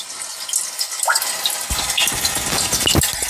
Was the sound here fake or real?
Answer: real